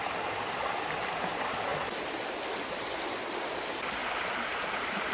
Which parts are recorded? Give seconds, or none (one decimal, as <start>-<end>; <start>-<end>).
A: 0.0-4.0